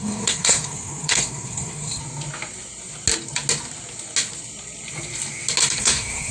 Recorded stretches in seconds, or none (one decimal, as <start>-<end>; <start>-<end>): 2.0-5.8